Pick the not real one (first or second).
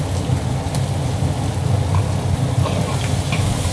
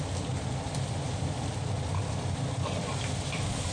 second